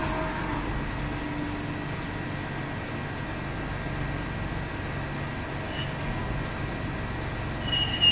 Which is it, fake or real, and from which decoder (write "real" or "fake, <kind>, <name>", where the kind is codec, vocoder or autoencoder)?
real